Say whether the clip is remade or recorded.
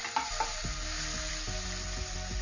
recorded